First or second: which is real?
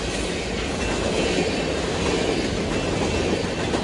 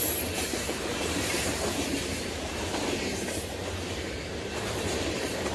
first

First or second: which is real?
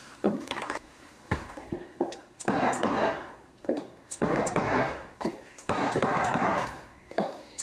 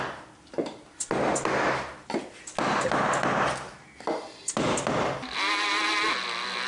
second